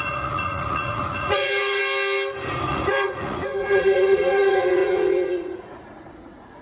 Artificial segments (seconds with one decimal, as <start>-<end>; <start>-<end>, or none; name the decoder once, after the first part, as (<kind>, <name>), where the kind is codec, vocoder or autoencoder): 0.0-1.8 (vocoder, Vocos); 2.7-6.6